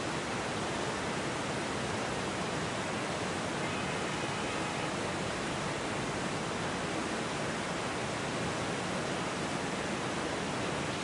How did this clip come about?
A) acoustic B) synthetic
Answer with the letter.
A